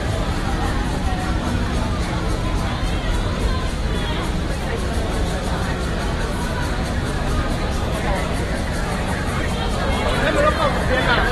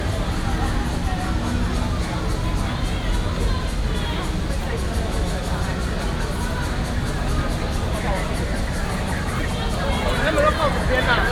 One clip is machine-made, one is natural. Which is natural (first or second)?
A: second